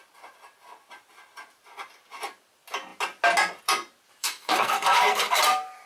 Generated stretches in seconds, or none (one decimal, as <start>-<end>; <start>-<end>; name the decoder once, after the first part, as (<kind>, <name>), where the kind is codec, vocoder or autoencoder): 4.2-5.4 (codec, SNAC)